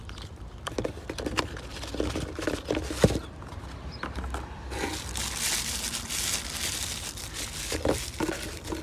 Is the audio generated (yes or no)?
no